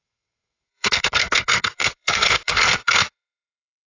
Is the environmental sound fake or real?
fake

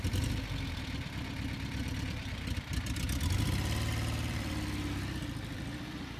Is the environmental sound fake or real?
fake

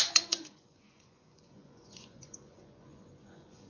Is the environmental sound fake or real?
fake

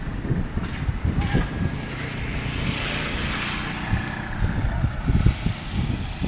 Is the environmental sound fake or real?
real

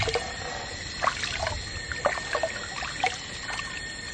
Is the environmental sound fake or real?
real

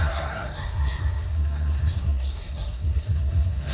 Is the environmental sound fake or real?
fake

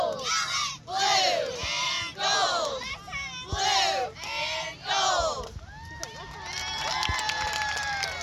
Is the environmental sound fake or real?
real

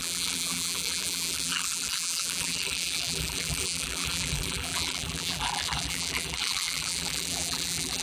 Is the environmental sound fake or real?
fake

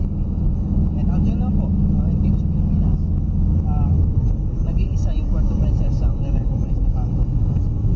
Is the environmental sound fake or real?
real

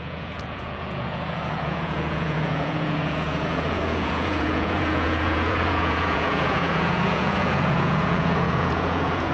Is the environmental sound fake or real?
fake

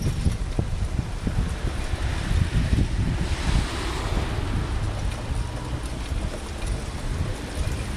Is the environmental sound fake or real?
real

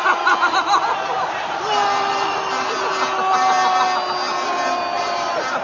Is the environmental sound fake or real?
real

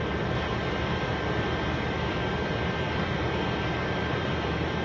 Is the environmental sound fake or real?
fake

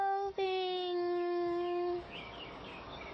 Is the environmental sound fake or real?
fake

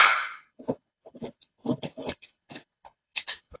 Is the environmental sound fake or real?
fake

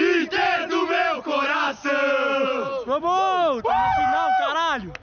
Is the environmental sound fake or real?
real